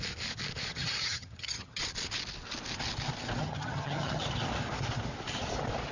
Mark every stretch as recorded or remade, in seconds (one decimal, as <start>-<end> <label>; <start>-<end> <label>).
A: 0.0-0.7 recorded; 0.7-1.8 remade; 1.8-3.4 recorded; 3.4-4.2 remade; 4.2-5.9 recorded